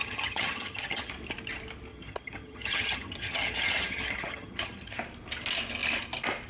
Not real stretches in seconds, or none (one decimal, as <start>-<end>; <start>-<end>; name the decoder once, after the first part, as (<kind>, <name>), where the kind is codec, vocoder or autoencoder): 0.0-1.1 (vocoder, HiFi-GAN); 1.9-5.0